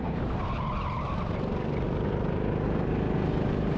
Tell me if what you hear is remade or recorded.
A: recorded